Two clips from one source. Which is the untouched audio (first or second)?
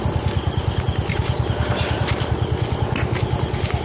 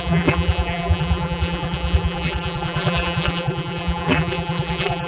first